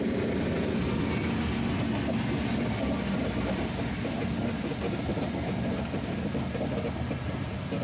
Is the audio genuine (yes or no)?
yes